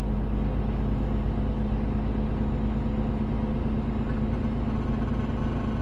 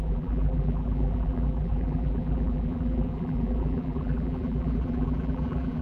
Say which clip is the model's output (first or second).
second